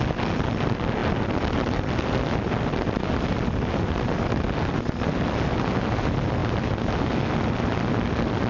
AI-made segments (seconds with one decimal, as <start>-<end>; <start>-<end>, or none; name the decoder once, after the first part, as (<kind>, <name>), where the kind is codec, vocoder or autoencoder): none